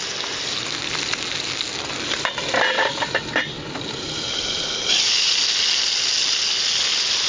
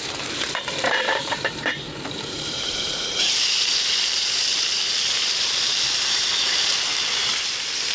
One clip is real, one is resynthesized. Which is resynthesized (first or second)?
second